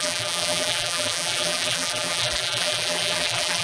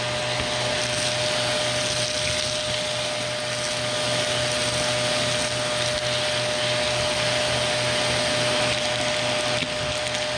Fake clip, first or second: first